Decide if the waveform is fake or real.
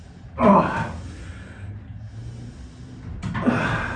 real